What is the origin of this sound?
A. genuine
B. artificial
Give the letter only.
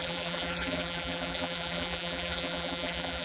B